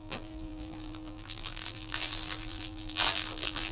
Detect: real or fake fake